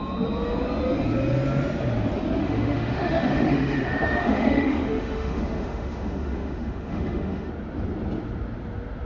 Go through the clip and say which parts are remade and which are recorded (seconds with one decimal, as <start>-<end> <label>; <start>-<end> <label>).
0.0-2.4 recorded; 2.4-7.5 remade; 7.5-9.1 recorded